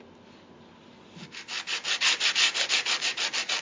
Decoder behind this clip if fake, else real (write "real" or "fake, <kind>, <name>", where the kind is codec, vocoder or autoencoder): real